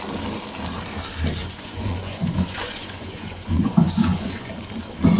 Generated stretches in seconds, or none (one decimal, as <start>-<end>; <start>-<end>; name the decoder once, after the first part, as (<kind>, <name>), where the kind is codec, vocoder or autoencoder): 1.4-4.5 (vocoder, Vocos)